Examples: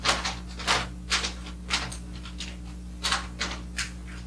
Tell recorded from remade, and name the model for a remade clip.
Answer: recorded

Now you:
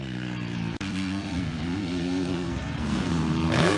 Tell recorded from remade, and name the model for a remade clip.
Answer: remade, codec, SNAC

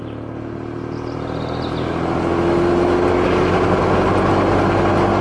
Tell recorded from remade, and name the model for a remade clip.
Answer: recorded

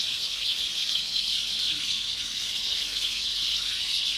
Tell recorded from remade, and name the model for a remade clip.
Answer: remade, codec, SNAC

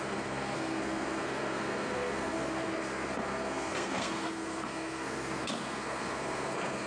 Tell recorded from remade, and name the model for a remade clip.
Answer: remade, codec, SNAC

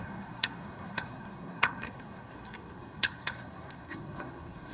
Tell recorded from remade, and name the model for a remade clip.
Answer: remade, codec, SNAC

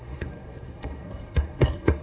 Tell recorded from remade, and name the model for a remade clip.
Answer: remade, codec, SNAC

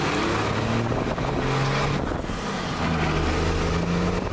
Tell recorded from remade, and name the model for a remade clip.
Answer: recorded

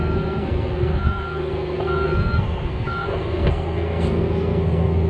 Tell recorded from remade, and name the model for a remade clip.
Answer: remade, codec, SNAC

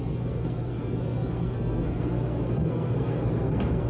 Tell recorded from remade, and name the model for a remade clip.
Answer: remade, codec, SNAC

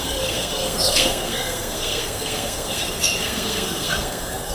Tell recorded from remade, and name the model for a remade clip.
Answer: remade, codec, SNAC